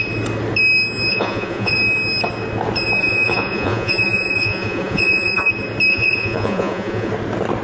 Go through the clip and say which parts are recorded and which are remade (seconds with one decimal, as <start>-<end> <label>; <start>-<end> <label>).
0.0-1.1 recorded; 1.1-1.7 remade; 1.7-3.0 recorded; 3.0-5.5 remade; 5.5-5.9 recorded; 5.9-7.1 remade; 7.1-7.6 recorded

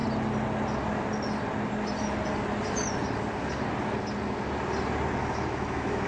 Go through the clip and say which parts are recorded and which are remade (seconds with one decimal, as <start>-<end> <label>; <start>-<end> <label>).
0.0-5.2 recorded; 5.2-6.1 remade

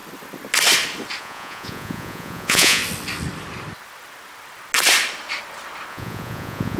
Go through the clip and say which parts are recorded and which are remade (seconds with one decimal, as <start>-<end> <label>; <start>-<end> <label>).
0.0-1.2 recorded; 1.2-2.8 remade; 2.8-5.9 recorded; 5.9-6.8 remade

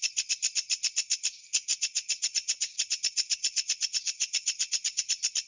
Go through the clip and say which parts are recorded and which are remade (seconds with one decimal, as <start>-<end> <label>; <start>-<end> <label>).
0.0-1.7 recorded; 1.7-5.0 remade; 5.0-5.5 recorded

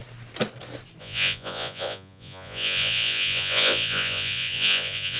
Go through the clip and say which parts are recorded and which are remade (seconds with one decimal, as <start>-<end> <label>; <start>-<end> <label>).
0.0-1.0 recorded; 1.0-5.2 remade